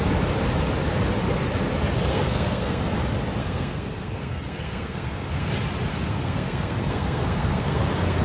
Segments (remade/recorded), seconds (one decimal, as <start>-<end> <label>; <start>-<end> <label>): 0.0-2.1 recorded; 2.1-2.8 remade; 2.8-3.4 recorded; 3.4-5.5 remade; 5.5-5.9 recorded; 5.9-8.2 remade